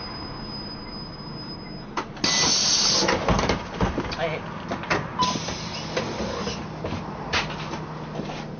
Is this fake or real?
real